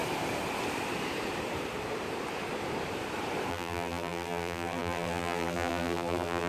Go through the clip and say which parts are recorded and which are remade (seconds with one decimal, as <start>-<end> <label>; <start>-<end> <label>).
0.0-3.5 recorded; 3.5-6.5 remade